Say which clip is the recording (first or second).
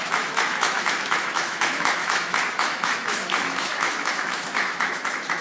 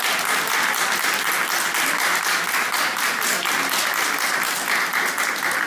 second